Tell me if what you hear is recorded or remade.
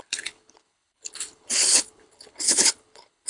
remade